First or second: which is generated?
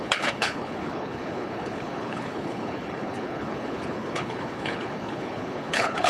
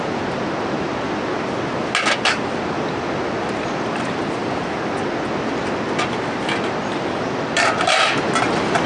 first